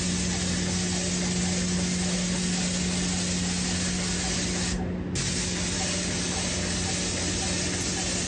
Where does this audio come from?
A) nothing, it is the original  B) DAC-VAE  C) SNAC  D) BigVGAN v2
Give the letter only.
A